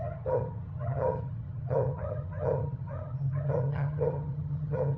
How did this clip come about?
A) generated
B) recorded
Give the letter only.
A